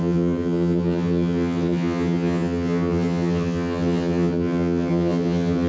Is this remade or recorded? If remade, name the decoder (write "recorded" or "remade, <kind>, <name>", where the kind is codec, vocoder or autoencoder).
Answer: remade, vocoder, HiFi-GAN